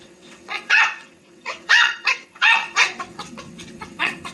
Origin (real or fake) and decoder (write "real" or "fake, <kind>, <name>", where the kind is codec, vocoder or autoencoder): fake, vocoder, WaveNeXt